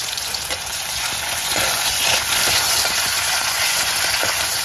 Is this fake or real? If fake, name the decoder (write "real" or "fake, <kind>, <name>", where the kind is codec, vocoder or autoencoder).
fake, vocoder, Vocos